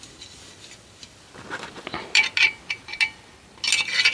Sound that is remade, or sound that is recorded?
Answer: recorded